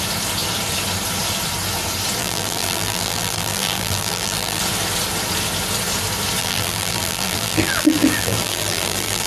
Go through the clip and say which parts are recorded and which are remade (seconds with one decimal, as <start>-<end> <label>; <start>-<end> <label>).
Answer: 0.0-2.2 recorded; 2.2-4.6 remade; 4.6-6.4 recorded; 6.4-9.3 remade